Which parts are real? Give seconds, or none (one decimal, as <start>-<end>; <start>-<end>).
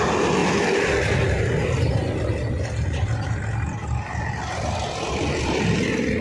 0.0-6.2